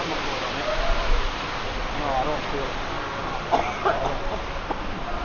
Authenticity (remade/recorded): recorded